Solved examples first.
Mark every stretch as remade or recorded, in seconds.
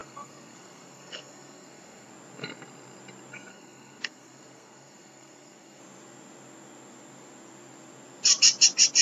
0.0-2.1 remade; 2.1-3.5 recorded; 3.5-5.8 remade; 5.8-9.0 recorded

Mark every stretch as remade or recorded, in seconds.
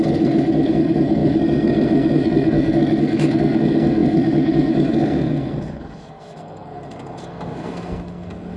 0.0-8.6 remade